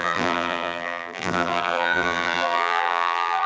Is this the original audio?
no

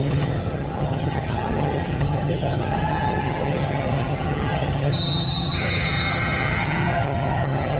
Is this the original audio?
no